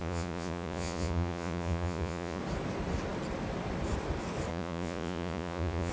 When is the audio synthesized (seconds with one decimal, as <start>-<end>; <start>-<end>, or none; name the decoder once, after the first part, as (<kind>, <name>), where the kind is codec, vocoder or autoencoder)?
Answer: 0.0-2.4 (vocoder, Vocos); 4.5-5.9

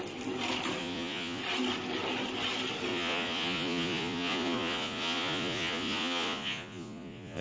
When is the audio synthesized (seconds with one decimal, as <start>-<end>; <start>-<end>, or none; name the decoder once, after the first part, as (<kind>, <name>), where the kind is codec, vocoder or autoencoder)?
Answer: 0.8-1.4 (vocoder, Vocos); 2.9-7.4

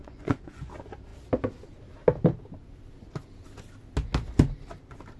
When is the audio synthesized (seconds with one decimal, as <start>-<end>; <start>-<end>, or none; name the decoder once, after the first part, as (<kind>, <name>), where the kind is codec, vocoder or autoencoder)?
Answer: 0.0-0.7 (vocoder, Vocos)

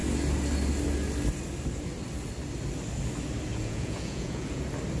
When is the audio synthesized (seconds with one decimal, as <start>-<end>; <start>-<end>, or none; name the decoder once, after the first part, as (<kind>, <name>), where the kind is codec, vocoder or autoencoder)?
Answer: 3.5-4.6 (vocoder, Vocos)

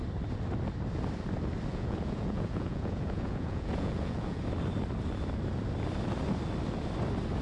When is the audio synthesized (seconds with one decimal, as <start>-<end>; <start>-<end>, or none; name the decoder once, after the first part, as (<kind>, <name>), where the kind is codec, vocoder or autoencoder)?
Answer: 1.7-4.4 (vocoder, Vocos)